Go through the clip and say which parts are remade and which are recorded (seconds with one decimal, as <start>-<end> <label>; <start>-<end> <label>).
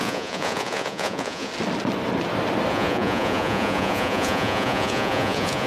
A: 0.0-1.5 remade; 1.5-2.7 recorded; 2.7-5.7 remade